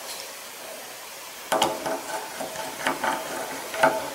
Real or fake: real